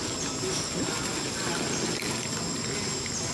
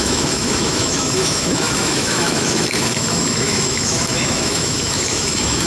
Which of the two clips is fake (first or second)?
second